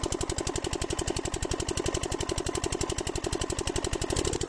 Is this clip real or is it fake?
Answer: real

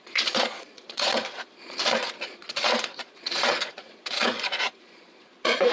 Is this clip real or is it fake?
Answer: fake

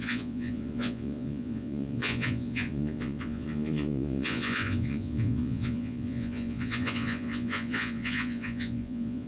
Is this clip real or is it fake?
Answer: fake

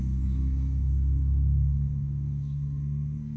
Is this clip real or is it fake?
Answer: fake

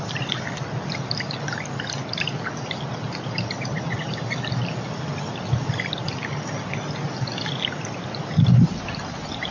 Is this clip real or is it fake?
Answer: real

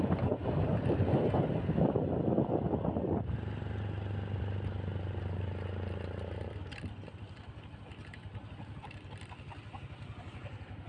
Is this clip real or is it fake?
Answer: real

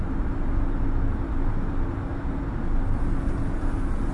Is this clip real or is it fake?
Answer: real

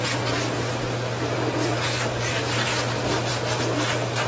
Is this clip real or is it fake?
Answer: real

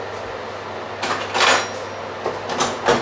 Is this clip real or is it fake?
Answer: real